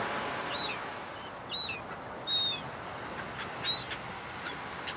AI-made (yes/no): no